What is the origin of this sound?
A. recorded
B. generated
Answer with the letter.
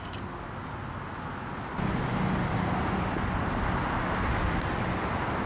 A